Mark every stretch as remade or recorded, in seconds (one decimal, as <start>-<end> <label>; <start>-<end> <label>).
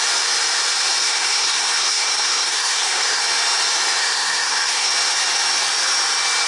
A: 0.0-1.0 recorded; 1.0-3.2 remade; 3.2-4.0 recorded; 4.0-4.9 remade; 4.9-6.5 recorded